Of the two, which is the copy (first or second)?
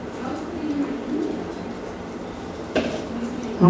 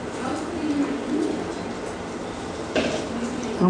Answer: first